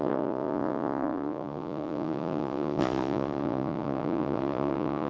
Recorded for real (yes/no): no